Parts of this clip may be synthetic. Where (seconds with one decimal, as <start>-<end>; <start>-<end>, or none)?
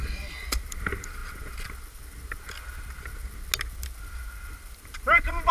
none